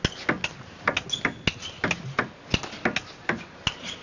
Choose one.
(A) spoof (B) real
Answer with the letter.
B